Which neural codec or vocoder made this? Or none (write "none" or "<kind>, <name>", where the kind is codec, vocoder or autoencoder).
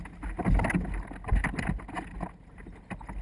none